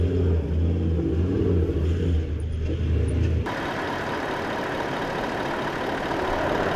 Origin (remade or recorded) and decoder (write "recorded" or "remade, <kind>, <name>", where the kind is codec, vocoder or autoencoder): recorded